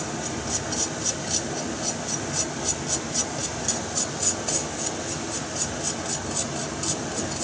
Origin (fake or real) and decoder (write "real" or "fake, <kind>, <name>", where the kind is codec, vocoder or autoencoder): real